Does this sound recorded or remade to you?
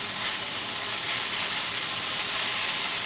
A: recorded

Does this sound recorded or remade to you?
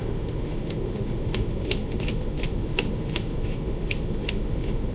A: remade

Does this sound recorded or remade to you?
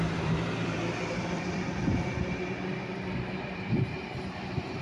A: remade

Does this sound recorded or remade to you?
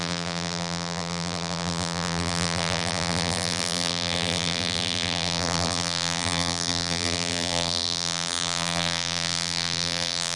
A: remade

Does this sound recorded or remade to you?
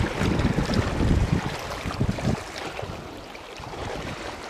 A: recorded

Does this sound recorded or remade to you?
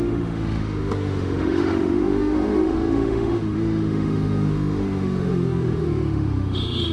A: remade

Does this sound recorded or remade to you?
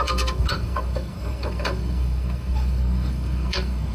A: remade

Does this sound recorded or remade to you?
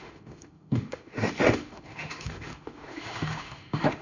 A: remade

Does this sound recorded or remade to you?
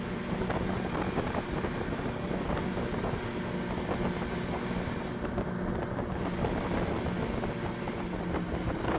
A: recorded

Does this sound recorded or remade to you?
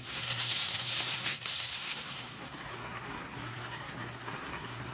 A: remade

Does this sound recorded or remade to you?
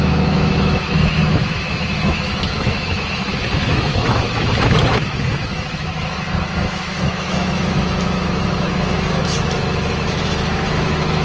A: remade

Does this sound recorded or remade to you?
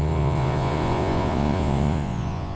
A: remade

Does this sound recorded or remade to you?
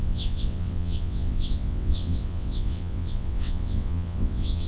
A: remade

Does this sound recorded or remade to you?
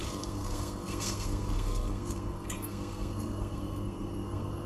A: remade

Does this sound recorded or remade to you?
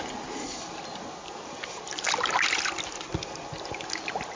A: recorded